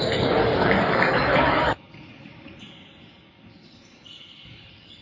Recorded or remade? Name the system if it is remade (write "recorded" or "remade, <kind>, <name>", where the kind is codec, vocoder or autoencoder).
remade, codec, DAC